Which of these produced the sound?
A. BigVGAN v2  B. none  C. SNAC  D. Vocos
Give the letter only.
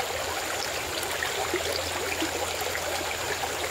B